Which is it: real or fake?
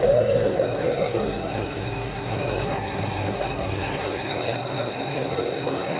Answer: fake